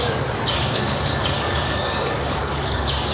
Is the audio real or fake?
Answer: fake